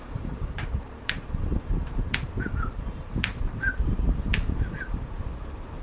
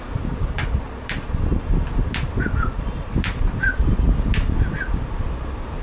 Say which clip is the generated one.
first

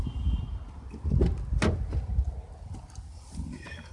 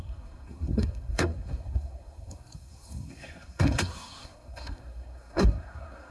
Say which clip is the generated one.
second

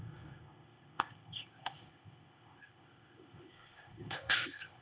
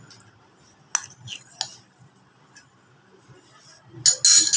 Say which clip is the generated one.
first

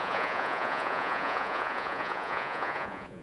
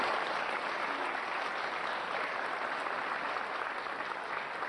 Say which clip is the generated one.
first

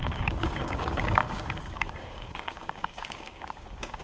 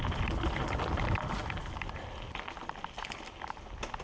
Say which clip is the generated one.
first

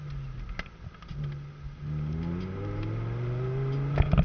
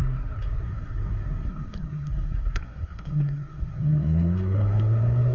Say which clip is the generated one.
second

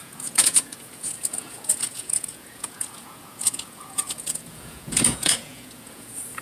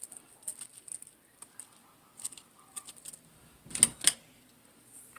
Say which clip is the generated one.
first